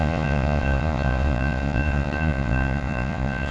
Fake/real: fake